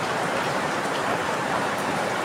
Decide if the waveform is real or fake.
fake